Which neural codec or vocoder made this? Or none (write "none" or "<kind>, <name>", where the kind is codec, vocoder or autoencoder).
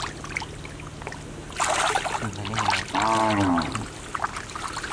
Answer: none